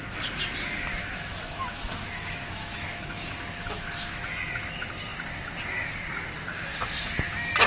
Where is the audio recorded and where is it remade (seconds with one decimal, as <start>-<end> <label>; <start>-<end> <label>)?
0.0-0.9 recorded; 0.9-4.2 remade; 4.2-7.7 recorded